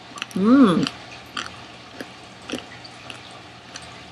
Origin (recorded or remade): recorded